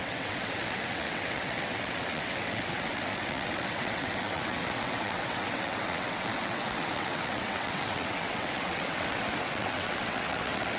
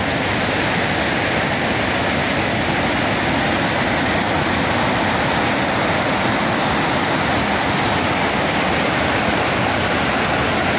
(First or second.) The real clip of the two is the second